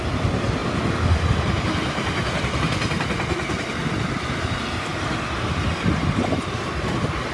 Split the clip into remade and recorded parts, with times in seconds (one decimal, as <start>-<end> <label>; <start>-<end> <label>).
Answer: 0.0-7.3 recorded